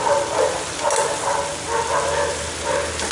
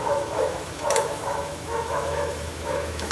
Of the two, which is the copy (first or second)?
second